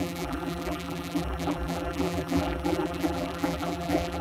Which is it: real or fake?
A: fake